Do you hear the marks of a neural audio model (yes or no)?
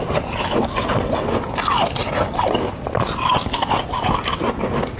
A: no